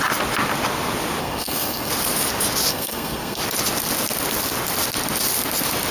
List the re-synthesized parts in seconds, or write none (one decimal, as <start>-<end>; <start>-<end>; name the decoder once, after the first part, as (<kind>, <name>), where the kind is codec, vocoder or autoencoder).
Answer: 1.2-1.9 (codec, SNAC); 2.7-3.4